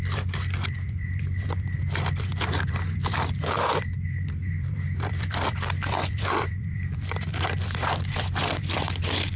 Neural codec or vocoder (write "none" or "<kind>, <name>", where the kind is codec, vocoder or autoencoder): vocoder, BigVGAN v2